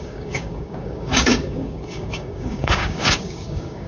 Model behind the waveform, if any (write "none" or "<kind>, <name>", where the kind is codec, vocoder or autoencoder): codec, DAC